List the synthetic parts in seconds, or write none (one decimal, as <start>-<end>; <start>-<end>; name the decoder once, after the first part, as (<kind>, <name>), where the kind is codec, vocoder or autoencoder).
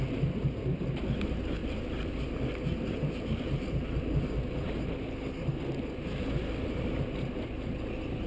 none